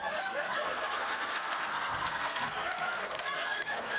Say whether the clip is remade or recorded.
remade